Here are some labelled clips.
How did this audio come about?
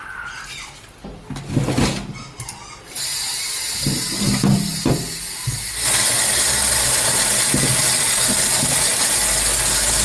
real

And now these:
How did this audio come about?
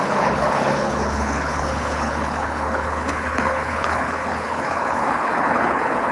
fake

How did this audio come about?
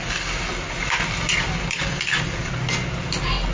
real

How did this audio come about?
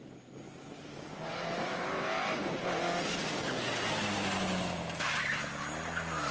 real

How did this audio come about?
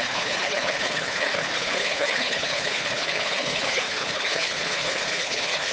fake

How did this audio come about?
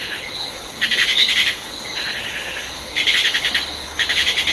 fake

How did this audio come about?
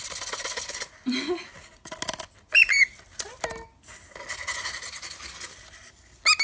real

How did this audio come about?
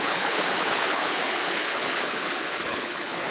fake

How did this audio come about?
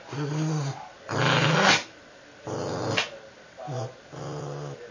real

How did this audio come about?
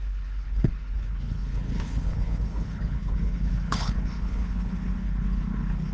fake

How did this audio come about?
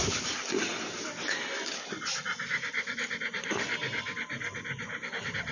real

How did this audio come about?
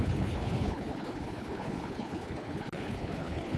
fake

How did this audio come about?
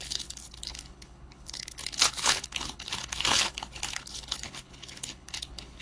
fake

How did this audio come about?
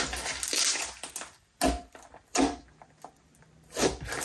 real